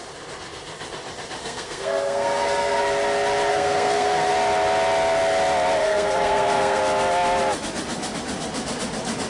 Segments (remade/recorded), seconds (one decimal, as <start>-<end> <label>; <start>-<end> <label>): 0.0-1.4 recorded; 1.4-2.8 remade; 2.8-3.5 recorded; 3.5-4.3 remade; 4.3-5.8 recorded; 5.8-6.8 remade; 6.8-9.3 recorded